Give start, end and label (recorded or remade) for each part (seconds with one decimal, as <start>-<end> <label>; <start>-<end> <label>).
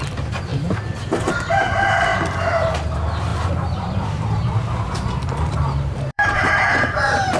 0.0-3.3 recorded; 3.3-7.4 remade